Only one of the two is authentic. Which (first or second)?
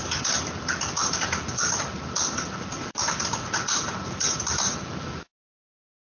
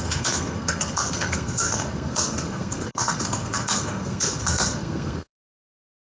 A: first